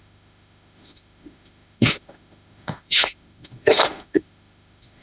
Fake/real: fake